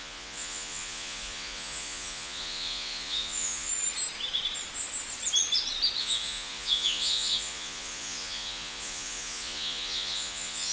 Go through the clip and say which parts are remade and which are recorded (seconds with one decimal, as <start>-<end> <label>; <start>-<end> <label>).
0.0-3.7 remade; 3.7-6.0 recorded; 6.0-10.7 remade